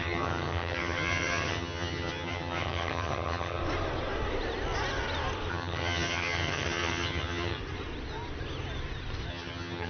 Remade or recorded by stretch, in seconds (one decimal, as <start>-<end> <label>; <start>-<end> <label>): 0.0-3.6 remade; 3.6-5.5 recorded; 5.5-7.6 remade; 7.6-9.3 recorded; 9.3-9.9 remade

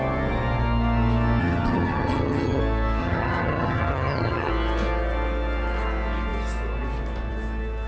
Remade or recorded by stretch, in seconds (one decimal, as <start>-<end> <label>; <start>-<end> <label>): 0.0-1.4 recorded; 1.4-2.6 remade; 2.6-3.0 recorded; 3.0-4.5 remade; 4.5-7.9 recorded

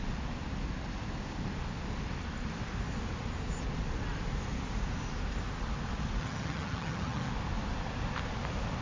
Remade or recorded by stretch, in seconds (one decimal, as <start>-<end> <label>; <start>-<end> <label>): 0.0-6.2 recorded; 6.2-7.3 remade; 7.3-8.8 recorded

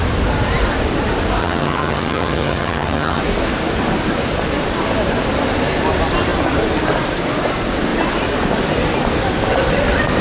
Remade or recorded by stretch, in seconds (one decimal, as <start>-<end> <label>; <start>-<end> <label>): 0.0-1.4 recorded; 1.4-3.2 remade; 3.2-10.2 recorded

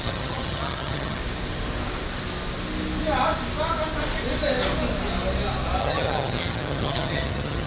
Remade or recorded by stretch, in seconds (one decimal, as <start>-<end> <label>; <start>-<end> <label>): 0.0-1.2 remade; 1.2-5.8 recorded; 5.8-7.7 remade

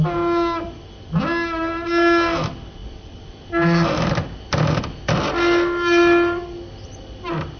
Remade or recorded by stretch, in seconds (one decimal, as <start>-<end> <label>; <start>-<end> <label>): 0.0-7.6 recorded

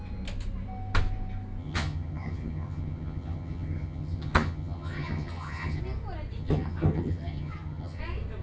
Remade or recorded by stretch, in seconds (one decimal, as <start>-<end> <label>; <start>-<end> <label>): 0.0-1.6 recorded; 1.6-5.8 remade; 5.8-6.4 recorded; 6.4-8.0 remade; 8.0-8.4 recorded